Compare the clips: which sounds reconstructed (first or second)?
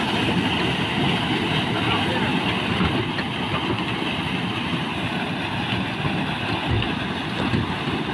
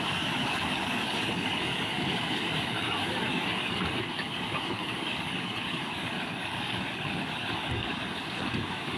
second